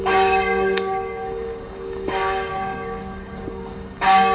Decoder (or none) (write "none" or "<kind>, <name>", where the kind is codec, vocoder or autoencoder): codec, DAC